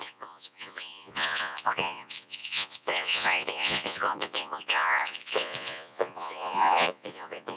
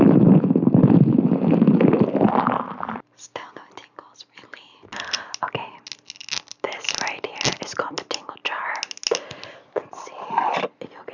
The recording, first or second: second